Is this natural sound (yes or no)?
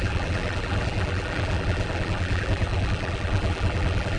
no